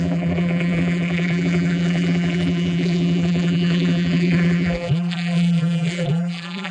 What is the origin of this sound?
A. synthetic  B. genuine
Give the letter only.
A